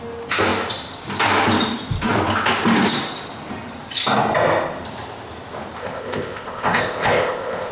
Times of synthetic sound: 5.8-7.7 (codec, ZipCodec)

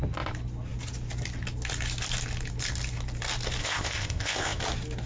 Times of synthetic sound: 3.6-4.6 (codec, ZipCodec)

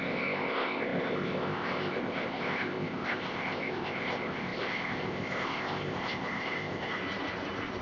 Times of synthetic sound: 0.0-7.0 (codec, ZipCodec)

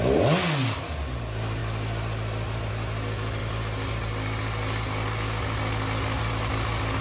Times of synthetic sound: none